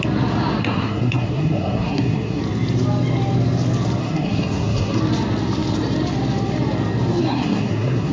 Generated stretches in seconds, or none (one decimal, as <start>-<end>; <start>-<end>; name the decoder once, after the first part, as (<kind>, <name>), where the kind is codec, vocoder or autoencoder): 0.6-2.4 (codec, SNAC); 4.0-5.0; 7.2-8.1